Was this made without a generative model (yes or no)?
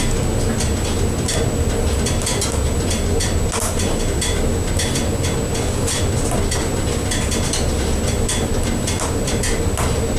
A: yes